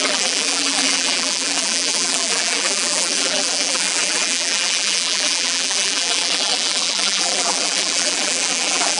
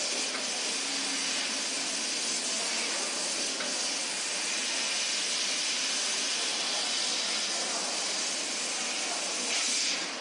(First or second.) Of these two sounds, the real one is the second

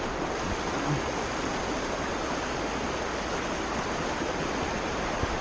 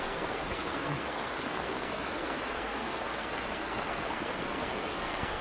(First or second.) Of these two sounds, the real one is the first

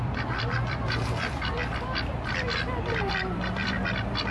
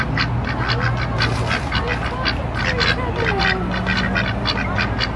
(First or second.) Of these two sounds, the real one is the second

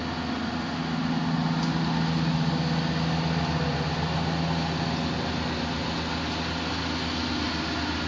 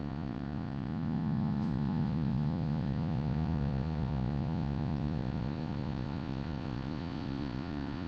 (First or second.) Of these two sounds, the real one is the first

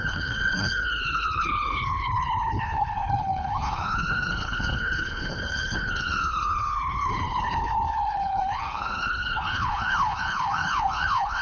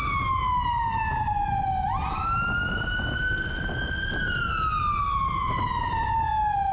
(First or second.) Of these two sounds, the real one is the second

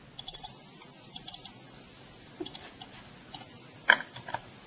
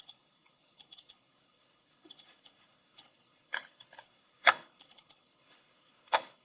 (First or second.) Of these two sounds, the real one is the first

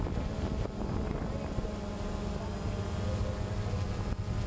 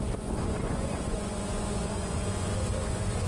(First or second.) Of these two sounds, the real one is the first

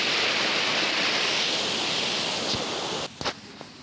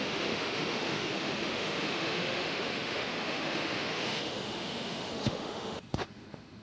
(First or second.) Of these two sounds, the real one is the first